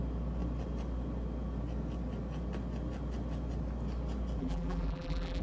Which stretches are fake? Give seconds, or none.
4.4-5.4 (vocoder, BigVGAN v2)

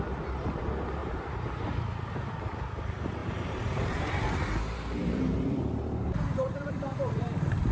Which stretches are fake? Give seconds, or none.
1.0-2.1 (vocoder, BigVGAN v2); 3.2-7.7